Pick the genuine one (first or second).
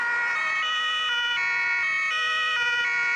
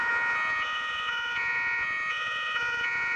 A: first